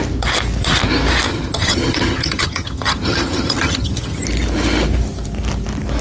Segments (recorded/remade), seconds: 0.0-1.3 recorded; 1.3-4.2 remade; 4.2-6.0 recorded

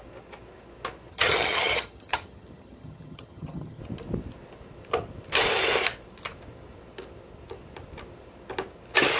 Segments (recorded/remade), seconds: 0.0-1.1 recorded; 1.1-3.8 remade; 3.8-9.2 recorded

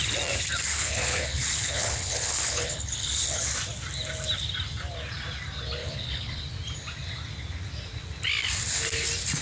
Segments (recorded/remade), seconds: 0.0-0.7 recorded; 0.7-3.4 remade; 3.4-5.8 recorded; 5.8-6.4 remade; 6.4-9.4 recorded

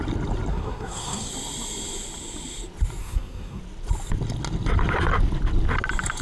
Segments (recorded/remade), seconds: 0.0-0.5 recorded; 0.5-1.3 remade; 1.3-3.0 recorded; 3.0-3.6 remade; 3.6-6.2 recorded

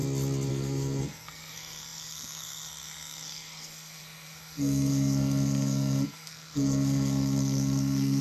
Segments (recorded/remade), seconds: 0.0-0.5 recorded; 0.5-8.2 remade